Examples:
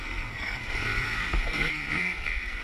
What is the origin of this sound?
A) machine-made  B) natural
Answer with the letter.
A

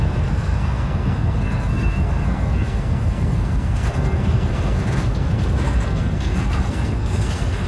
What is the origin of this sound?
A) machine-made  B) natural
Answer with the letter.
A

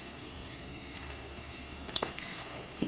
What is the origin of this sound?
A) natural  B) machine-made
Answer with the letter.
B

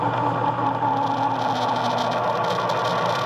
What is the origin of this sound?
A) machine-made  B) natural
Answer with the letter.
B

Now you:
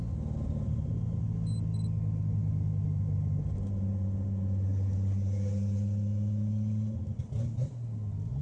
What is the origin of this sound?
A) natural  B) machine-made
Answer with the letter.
A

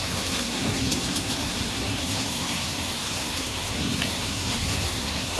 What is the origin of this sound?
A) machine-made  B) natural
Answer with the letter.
A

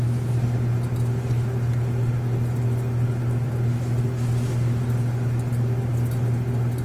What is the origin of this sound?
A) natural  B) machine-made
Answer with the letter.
A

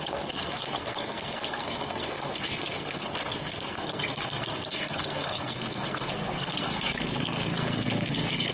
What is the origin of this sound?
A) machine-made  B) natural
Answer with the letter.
A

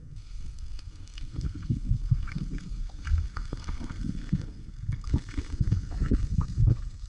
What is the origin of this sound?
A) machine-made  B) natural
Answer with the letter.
A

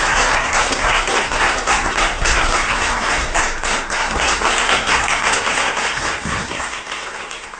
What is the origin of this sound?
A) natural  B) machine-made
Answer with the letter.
B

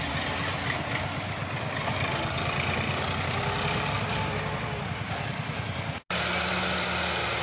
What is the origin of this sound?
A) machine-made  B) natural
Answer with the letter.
B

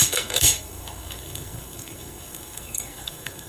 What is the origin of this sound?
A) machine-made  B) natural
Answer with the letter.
A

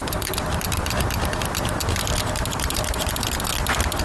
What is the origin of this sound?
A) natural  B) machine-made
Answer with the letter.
A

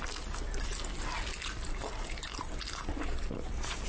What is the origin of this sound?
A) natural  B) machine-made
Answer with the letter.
A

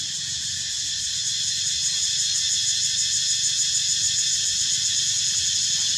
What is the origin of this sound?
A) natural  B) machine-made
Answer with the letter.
A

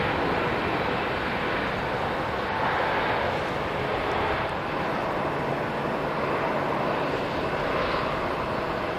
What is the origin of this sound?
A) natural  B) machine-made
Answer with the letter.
A